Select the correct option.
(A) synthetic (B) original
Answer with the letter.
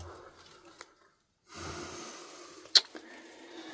B